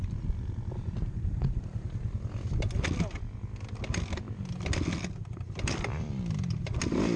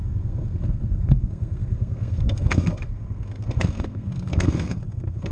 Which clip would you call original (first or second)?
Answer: first